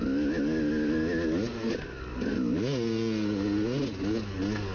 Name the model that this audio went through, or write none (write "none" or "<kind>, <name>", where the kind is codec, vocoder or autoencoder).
none